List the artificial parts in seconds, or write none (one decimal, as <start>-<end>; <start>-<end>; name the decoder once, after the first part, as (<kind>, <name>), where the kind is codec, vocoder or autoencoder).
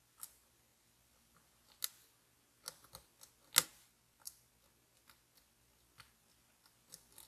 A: none